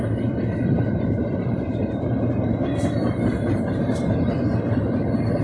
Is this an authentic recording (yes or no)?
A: no